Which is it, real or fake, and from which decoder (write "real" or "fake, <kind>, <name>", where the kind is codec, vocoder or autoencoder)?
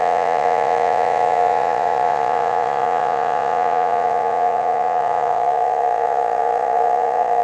fake, vocoder, Vocos